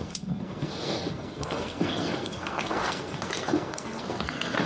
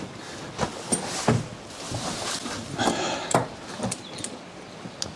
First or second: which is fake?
first